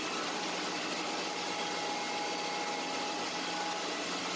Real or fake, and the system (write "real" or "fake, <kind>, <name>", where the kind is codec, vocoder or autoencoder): real